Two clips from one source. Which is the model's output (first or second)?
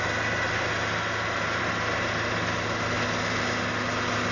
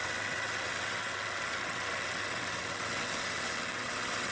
second